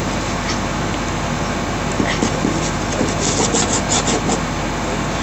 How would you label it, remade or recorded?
recorded